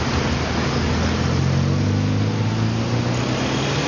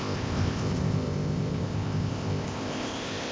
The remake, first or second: second